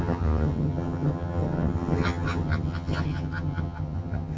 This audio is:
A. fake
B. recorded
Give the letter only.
A